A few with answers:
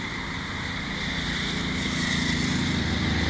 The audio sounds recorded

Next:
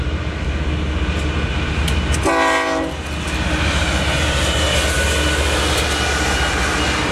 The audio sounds recorded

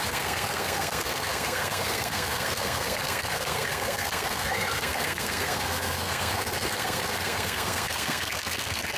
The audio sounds remade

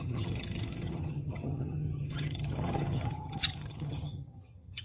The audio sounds remade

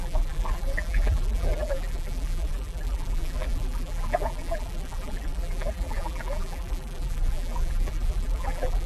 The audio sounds remade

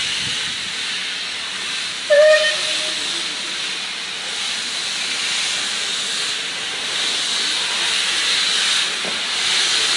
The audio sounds recorded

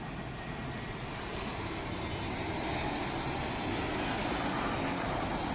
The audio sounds recorded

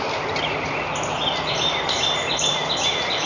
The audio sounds recorded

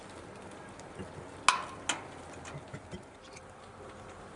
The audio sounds recorded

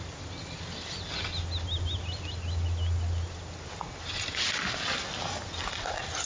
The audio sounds recorded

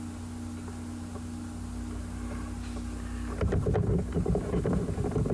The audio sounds recorded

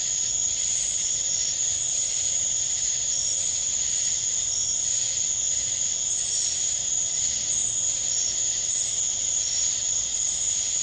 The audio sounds recorded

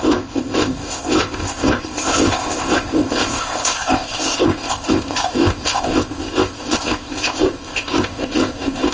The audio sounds remade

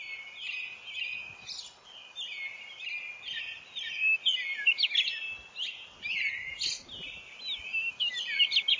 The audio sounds recorded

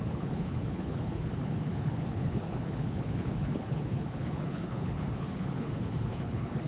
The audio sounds remade